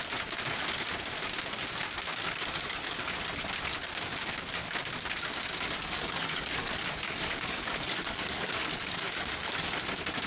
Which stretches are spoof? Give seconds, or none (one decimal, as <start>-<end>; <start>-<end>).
2.1-3.1; 5.8-9.8